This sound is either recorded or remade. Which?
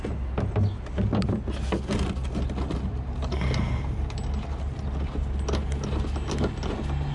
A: recorded